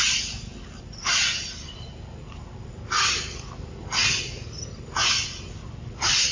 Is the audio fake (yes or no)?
no